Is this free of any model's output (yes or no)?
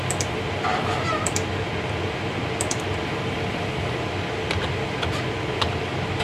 no